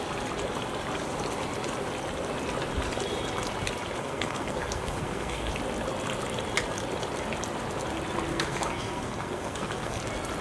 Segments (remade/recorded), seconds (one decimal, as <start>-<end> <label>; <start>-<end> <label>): 0.0-4.0 recorded; 4.0-5.5 remade; 5.5-8.3 recorded; 8.3-10.0 remade; 10.0-10.4 recorded